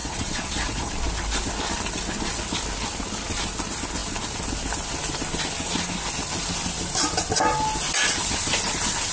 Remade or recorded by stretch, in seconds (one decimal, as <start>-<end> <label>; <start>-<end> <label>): 0.0-0.9 remade; 0.9-9.1 recorded